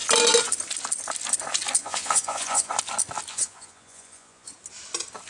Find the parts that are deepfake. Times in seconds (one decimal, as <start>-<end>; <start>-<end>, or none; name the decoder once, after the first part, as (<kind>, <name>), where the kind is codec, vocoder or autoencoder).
1.8-2.7 (vocoder, Vocos); 3.3-4.5